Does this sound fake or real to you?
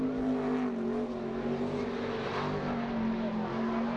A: real